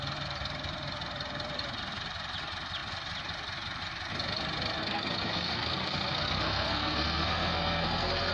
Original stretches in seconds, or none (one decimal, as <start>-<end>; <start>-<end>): 0.0-4.8